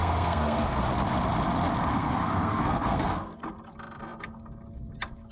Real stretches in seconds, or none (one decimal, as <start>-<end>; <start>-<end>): 0.8-1.9; 3.4-5.3